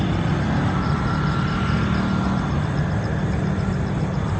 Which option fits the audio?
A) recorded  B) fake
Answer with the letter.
A